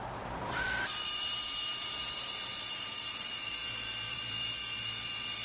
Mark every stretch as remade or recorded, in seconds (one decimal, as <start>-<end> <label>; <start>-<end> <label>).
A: 0.0-3.6 remade; 3.6-4.1 recorded; 4.1-4.6 remade; 4.6-5.4 recorded